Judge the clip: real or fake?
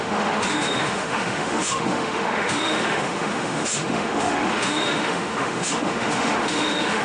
fake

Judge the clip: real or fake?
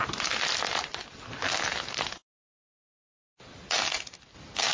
real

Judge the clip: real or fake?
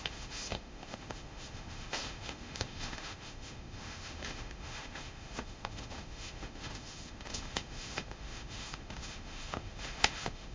fake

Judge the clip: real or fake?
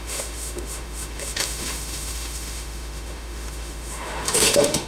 fake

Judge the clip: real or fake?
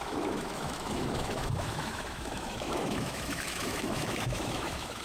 fake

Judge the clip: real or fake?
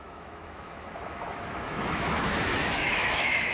fake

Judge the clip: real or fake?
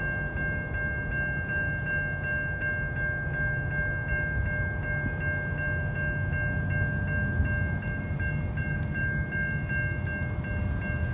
real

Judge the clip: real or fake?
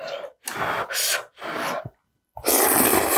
real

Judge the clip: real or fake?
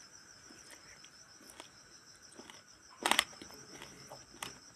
real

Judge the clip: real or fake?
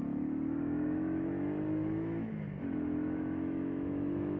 fake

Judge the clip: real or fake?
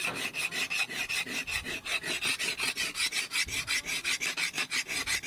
real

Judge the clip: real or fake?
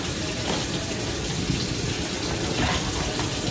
real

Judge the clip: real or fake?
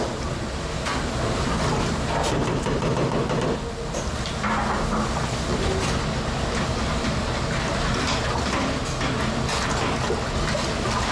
real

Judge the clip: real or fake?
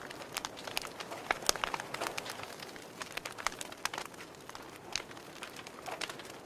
real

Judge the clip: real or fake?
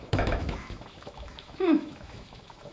fake